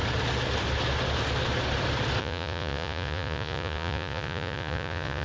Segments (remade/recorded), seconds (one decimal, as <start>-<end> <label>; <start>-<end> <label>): 0.0-2.2 recorded; 2.2-5.2 remade